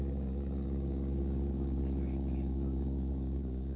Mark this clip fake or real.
fake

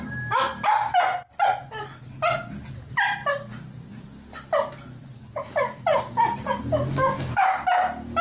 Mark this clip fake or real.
real